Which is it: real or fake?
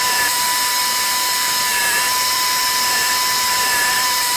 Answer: fake